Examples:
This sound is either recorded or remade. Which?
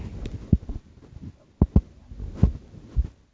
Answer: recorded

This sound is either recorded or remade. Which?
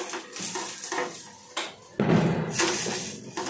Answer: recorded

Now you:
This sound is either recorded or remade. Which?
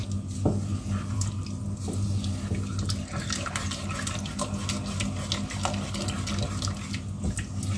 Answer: recorded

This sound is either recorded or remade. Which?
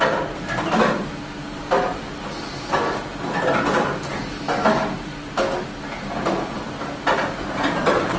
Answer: recorded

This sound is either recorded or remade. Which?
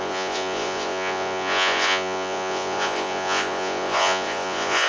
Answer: remade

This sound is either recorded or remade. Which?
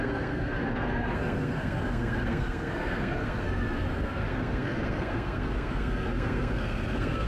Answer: remade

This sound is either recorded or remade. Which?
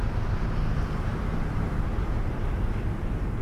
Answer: recorded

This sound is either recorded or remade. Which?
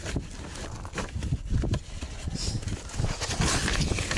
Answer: recorded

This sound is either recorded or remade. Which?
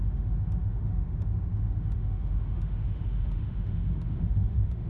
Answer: remade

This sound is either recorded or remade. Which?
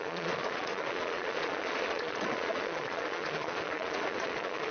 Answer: remade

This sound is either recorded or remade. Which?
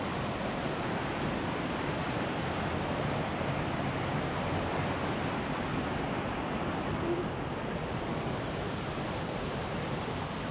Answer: recorded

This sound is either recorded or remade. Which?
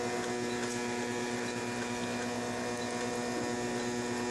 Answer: recorded